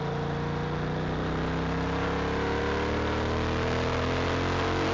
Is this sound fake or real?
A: real